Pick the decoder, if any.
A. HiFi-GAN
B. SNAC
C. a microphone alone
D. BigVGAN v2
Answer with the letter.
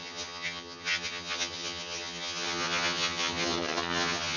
A